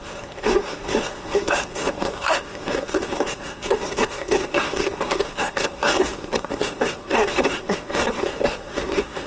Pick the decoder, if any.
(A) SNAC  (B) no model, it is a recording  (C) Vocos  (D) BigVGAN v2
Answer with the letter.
A